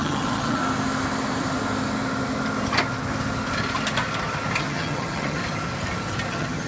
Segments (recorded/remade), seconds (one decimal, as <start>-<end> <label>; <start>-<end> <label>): 0.0-0.6 remade; 0.6-4.6 recorded; 4.6-5.4 remade; 5.4-6.3 recorded; 6.3-6.7 remade